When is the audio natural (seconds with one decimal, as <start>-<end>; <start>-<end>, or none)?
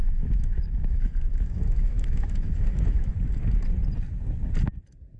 3.1-5.2